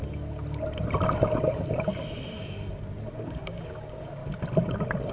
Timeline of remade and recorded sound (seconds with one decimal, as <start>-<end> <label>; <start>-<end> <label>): 0.0-3.1 recorded; 3.1-4.2 remade; 4.2-5.1 recorded